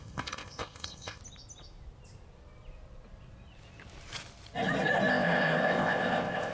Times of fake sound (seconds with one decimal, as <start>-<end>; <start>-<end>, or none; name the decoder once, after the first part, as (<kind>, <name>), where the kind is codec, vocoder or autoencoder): 0.0-1.2 (codec, ZipCodec); 5.1-6.5